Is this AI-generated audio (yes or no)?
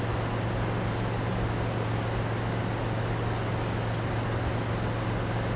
no